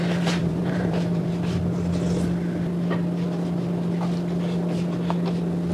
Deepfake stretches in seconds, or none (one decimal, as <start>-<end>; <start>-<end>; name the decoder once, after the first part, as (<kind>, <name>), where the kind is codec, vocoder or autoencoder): 0.4-1.6 (vocoder, BigVGAN v2)